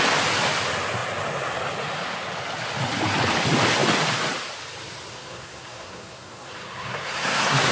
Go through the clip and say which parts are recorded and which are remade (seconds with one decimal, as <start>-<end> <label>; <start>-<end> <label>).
0.0-5.1 recorded; 5.1-7.7 remade